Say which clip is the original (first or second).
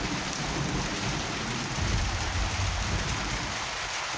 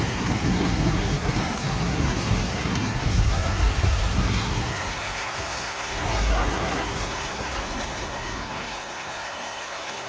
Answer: first